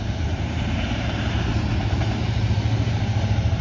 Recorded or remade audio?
remade